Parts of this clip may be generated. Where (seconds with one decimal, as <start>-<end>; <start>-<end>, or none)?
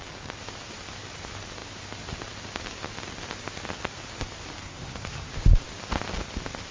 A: 4.6-5.3